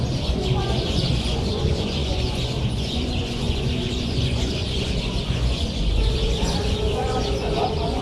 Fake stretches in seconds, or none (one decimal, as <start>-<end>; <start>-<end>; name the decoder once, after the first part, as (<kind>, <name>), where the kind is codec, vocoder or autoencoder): 0.0-8.0 (vocoder, Vocos)